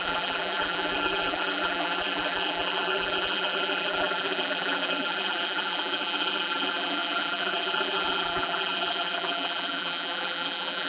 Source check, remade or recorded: remade